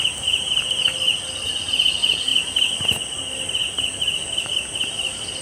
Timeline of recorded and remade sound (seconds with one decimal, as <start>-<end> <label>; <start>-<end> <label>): 0.0-5.4 recorded